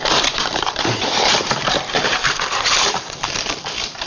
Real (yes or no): no